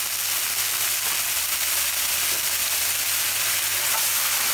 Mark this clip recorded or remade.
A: recorded